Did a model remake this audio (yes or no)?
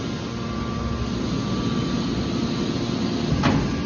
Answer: no